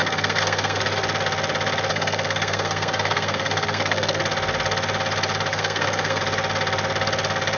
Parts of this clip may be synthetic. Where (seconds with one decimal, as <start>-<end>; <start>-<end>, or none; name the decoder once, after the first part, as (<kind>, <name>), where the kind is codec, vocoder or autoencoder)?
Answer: 0.0-0.8 (codec, SNAC); 1.9-4.2; 5.5-6.2